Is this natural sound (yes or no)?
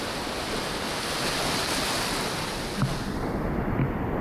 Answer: yes